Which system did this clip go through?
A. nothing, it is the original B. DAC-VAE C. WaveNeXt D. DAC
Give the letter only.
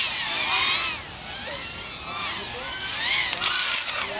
A